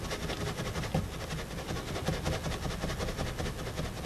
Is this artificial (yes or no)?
no